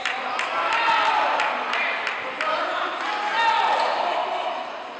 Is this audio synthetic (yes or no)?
no